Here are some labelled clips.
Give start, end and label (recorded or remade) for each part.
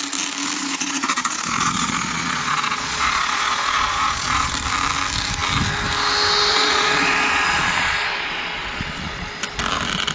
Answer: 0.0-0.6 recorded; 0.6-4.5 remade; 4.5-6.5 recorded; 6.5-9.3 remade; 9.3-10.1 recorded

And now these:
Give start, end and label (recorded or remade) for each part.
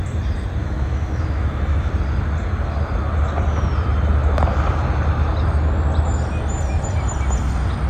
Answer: 0.0-0.6 recorded; 0.6-1.9 remade; 1.9-7.9 recorded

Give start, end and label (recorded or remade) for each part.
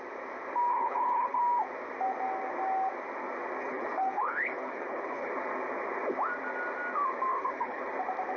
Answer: 0.0-0.7 recorded; 0.7-1.4 remade; 1.4-3.6 recorded; 3.6-5.3 remade; 5.3-7.3 recorded; 7.3-7.8 remade; 7.8-8.4 recorded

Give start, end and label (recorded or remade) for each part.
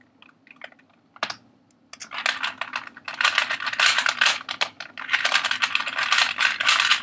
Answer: 0.0-7.0 recorded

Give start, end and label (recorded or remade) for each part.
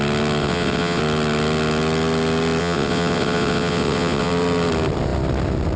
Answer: 0.0-0.4 recorded; 0.4-1.0 remade; 1.0-2.6 recorded; 2.6-4.3 remade; 4.3-5.8 recorded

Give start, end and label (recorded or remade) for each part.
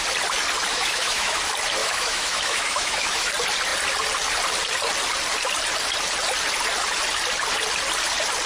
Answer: 0.0-0.7 recorded; 0.7-1.4 remade; 1.4-1.8 recorded; 1.8-3.3 remade; 3.3-8.5 recorded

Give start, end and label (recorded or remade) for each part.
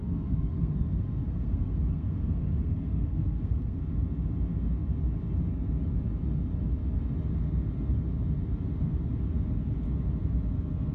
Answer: 0.0-3.8 remade; 3.8-10.9 recorded